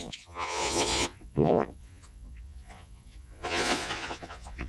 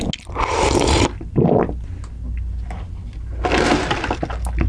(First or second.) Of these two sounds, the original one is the second